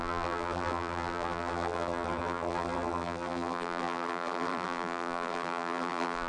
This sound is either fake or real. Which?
fake